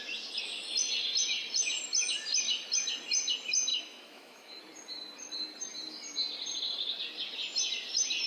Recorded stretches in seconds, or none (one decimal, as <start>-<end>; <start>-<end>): 0.0-3.7; 4.6-8.3